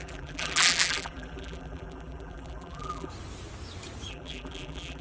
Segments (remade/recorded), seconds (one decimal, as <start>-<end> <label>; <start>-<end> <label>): 0.0-3.1 remade; 3.1-4.1 recorded; 4.1-5.0 remade